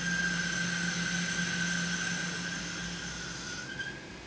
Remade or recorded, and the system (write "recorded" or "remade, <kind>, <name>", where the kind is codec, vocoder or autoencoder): recorded